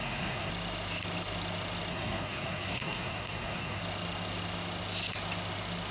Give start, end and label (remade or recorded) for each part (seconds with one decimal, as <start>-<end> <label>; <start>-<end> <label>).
0.0-0.5 remade; 0.5-1.9 recorded; 1.9-3.8 remade; 3.8-5.9 recorded